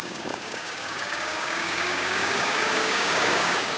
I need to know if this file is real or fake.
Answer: fake